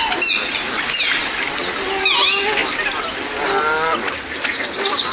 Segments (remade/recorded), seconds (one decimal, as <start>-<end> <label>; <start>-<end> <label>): 0.0-5.1 recorded